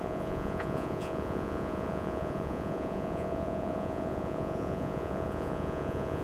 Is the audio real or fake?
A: fake